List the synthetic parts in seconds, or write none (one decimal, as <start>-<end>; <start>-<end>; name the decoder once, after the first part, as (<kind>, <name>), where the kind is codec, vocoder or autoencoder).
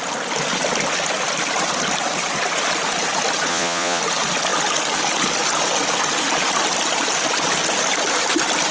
3.5-4.0 (vocoder, Vocos)